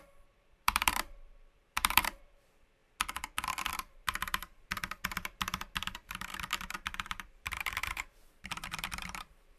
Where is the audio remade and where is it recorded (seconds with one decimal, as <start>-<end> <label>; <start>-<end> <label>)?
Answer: 0.0-2.8 remade; 2.8-3.7 recorded; 3.7-9.6 remade